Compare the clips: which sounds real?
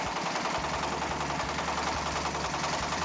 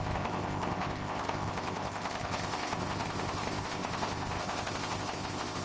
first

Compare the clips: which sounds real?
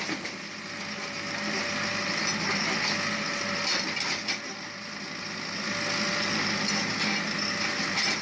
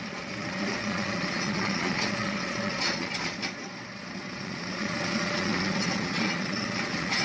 first